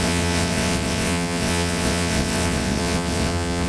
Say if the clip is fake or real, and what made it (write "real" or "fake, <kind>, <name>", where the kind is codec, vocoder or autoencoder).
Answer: fake, vocoder, WaveNeXt